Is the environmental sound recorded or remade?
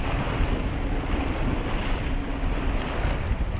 recorded